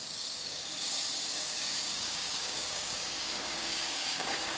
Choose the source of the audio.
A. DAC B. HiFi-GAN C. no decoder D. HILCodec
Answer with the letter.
A